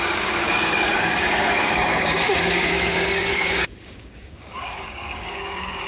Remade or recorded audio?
remade